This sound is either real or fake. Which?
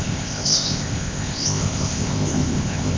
fake